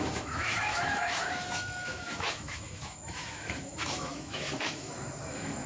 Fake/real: fake